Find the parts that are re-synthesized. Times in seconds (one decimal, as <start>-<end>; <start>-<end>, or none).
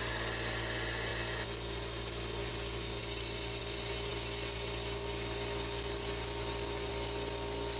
none